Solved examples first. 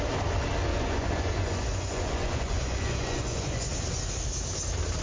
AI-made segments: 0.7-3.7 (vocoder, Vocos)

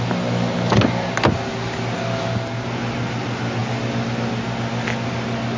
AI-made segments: none

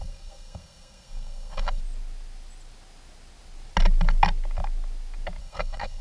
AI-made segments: 0.0-1.8 (codec, SNAC); 5.4-6.0

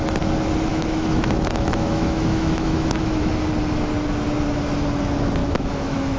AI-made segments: 0.7-3.3 (autoencoder, DAC-VAE); 5.4-6.2

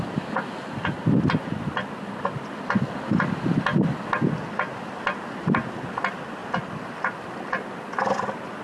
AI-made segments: none

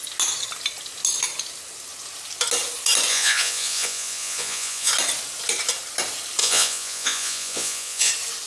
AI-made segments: 3.1-4.9 (vocoder, Vocos); 6.4-8.1